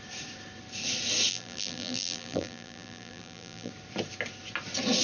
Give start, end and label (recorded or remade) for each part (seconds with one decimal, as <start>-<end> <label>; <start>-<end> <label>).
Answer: 0.0-1.3 recorded; 1.3-3.7 remade; 3.7-5.0 recorded